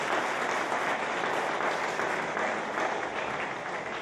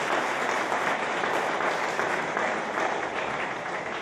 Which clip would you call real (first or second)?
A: first